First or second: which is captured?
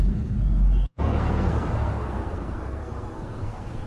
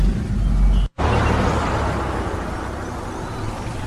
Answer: second